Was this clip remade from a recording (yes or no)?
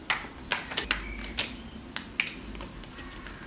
no